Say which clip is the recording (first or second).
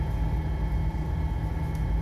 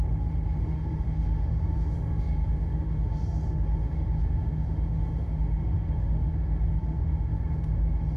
first